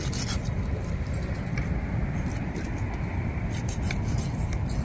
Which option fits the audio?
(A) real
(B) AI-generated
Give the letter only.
A